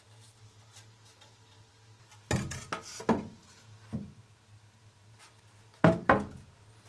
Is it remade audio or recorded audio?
recorded